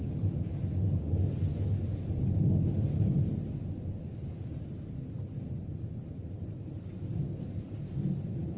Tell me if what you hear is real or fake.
real